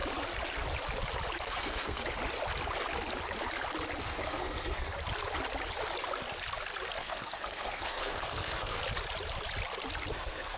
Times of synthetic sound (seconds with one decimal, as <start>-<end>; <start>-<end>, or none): 1.4-2.0; 4.0-4.9; 7.0-8.8; 10.1-10.6